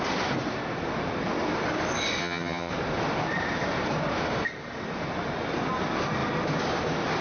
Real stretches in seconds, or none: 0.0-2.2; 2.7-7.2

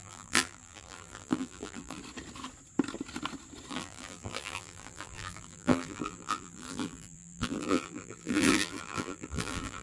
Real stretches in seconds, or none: 2.0-3.7

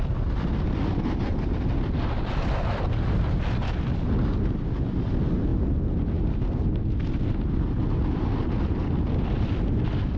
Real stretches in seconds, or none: 0.0-10.2

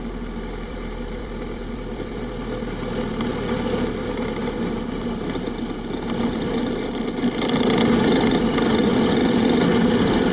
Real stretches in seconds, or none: 3.3-8.0; 8.9-9.9